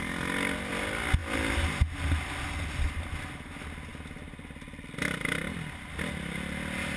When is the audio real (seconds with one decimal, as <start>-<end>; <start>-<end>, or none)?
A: 0.0-7.0